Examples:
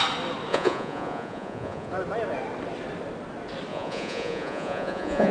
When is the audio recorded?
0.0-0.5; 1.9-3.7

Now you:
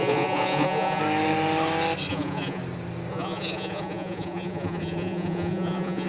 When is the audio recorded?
1.0-2.1; 2.6-3.1

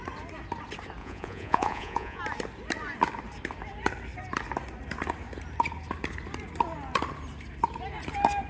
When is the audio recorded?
0.0-1.0; 2.2-8.5

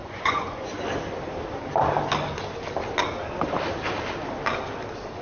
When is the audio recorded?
0.7-5.2